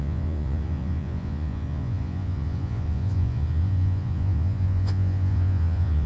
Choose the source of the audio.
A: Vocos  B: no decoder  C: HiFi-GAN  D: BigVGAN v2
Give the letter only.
A